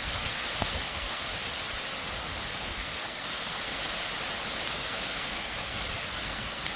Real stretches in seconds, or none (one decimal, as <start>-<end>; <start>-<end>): 1.3-2.5; 3.8-4.7